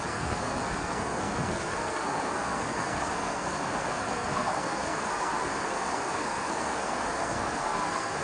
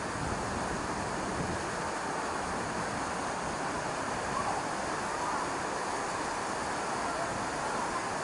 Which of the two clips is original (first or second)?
second